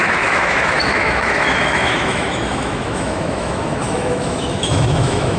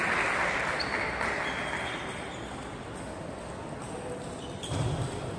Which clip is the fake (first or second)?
first